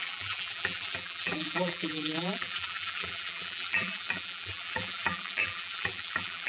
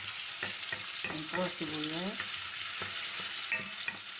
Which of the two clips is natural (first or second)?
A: second